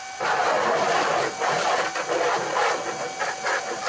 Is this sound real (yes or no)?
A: yes